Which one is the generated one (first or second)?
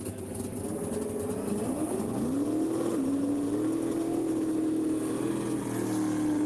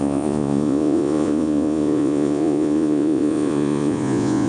second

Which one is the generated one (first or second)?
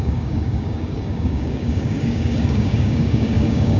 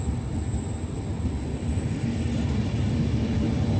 first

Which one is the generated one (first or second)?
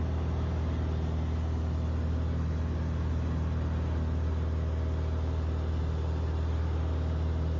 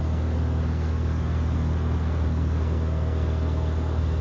second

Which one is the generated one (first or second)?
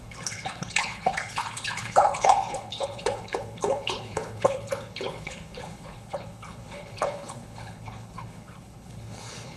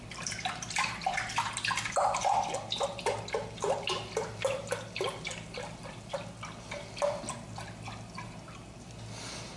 first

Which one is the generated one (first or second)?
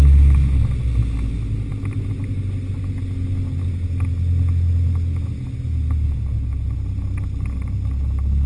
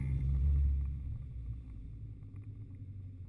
second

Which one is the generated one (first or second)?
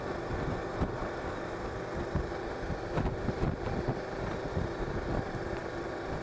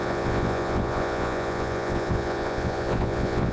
second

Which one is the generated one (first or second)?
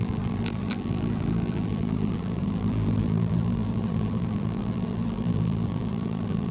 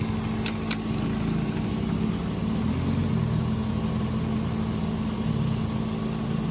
first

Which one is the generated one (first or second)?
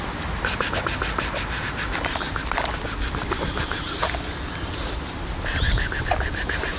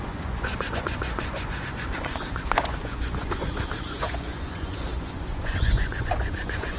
second